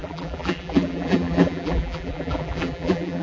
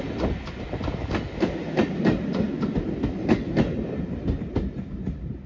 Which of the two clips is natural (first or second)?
second